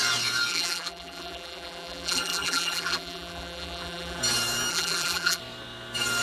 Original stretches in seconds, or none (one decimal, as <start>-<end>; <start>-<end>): 0.0-0.5; 4.2-4.7; 5.4-6.2